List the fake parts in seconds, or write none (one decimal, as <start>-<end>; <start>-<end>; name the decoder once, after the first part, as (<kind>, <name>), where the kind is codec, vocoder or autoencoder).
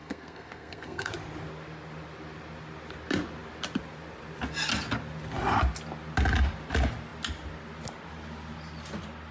0.0-1.1 (codec, SNAC)